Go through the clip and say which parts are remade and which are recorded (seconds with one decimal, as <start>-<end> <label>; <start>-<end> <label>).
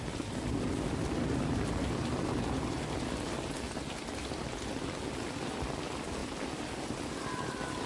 0.0-7.9 recorded